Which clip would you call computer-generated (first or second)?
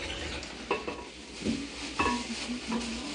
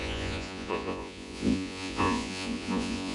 second